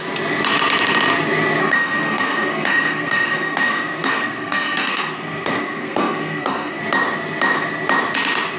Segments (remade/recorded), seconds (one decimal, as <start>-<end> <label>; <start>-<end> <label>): 0.0-1.6 recorded; 1.6-6.8 remade; 6.8-8.6 recorded